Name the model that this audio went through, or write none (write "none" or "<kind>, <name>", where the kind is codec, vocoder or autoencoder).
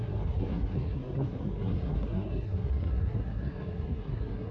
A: codec, SNAC